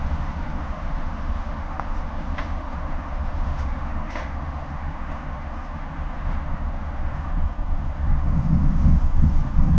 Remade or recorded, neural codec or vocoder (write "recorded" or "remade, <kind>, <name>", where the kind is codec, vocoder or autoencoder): remade, autoencoder, DAC-VAE